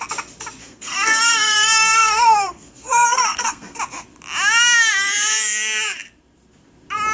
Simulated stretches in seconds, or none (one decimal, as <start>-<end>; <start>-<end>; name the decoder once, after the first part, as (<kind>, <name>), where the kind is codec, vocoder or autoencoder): 0.6-3.8 (codec, SNAC)